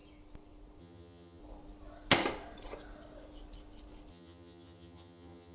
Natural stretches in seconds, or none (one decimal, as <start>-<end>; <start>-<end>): 0.0-0.8; 1.4-4.1